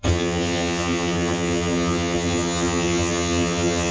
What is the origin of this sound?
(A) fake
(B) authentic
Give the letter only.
A